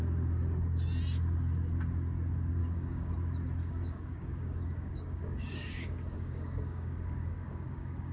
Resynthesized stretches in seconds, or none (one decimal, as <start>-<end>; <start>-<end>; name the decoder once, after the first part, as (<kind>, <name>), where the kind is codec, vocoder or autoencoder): 2.6-3.1 (codec, DAC); 3.6-8.1